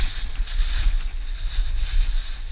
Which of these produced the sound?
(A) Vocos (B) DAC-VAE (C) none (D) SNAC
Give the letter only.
C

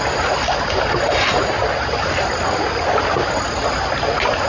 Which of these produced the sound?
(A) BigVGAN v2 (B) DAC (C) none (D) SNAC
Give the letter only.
C